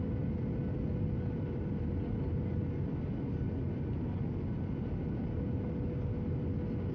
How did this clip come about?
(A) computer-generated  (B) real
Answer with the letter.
B